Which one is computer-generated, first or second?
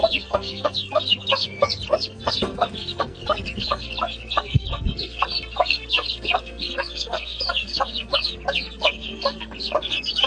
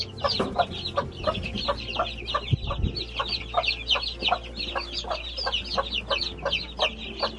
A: first